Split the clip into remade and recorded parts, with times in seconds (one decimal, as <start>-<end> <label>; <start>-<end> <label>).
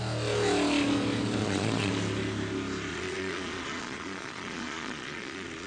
0.0-1.4 recorded; 1.4-1.9 remade; 1.9-2.9 recorded; 2.9-5.7 remade